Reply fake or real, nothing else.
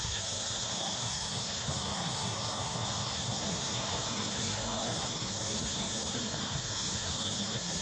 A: fake